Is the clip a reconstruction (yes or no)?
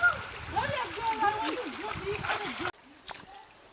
no